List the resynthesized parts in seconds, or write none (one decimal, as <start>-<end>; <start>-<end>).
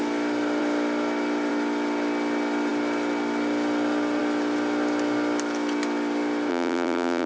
6.5-7.3